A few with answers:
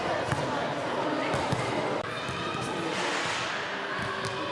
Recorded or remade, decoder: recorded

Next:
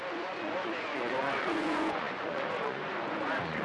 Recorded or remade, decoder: remade, vocoder, Vocos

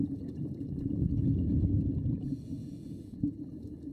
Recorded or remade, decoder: remade, vocoder, Vocos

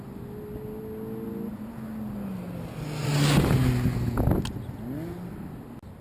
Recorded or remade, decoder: recorded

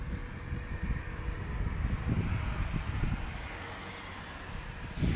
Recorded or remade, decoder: recorded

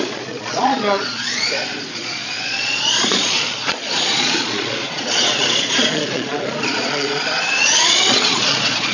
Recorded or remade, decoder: remade, vocoder, Vocos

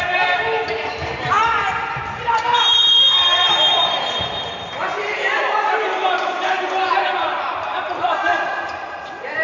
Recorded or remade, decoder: remade, vocoder, BigVGAN v2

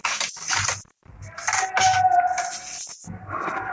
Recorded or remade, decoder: recorded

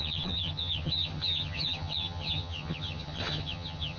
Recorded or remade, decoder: remade, vocoder, HiFi-GAN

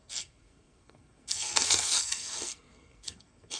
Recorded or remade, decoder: remade, codec, SNAC